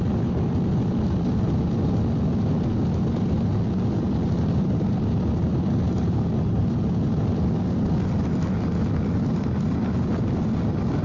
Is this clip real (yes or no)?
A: yes